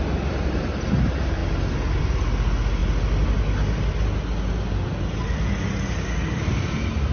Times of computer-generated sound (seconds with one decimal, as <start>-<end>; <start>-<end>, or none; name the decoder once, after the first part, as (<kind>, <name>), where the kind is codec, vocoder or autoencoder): none